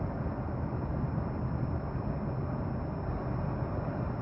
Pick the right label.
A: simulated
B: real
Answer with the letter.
B